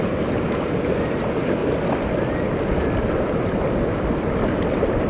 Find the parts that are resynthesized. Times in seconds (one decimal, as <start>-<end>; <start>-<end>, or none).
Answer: none